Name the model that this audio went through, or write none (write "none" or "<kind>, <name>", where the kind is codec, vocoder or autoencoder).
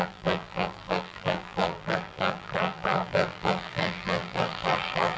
vocoder, BigVGAN v2